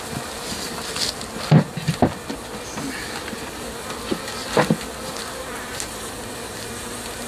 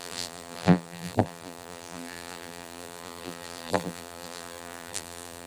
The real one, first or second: first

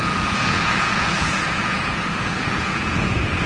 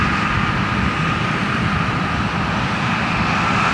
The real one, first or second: second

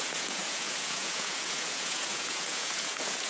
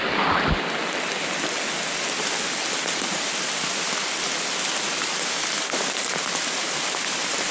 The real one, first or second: second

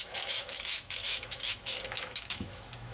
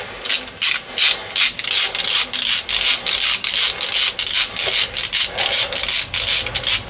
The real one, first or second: second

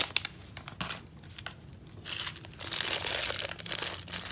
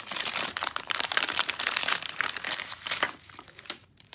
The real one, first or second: first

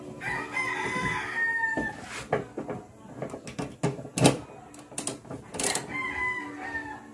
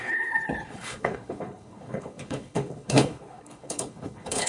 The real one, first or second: first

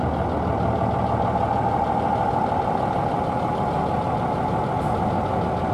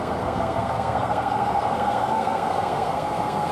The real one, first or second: first